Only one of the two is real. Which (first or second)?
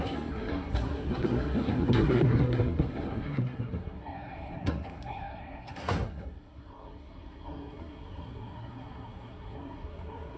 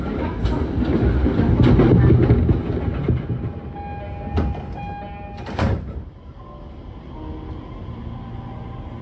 second